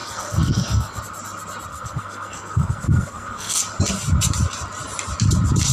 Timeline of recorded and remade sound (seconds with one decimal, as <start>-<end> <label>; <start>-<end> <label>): 0.0-1.0 remade; 1.0-1.7 recorded; 1.7-3.6 remade; 3.6-5.7 recorded